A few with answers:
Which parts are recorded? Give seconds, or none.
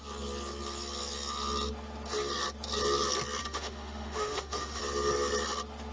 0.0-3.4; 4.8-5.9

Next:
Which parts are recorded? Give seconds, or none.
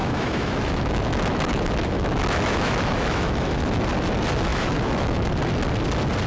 3.8-4.5; 5.3-6.3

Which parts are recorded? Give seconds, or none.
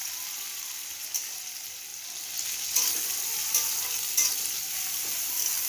0.0-5.7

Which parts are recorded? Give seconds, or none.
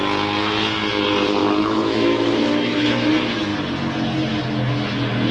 0.0-1.4; 3.1-5.3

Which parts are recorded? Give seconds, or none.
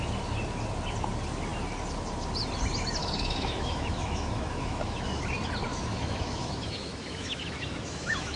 0.0-3.0; 5.2-5.7